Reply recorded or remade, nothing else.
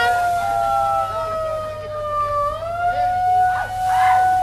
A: recorded